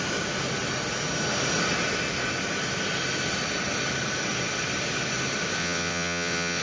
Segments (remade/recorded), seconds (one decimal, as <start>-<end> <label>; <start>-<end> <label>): 0.0-5.6 recorded; 5.6-6.6 remade